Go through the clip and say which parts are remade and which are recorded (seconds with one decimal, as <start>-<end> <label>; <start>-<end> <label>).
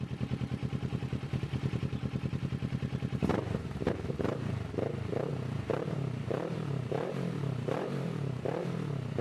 0.0-0.6 recorded; 0.6-3.9 remade; 3.9-5.3 recorded; 5.3-8.6 remade; 8.6-9.2 recorded